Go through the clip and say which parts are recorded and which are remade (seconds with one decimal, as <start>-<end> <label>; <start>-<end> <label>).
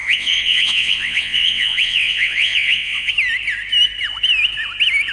0.0-3.1 remade; 3.1-5.1 recorded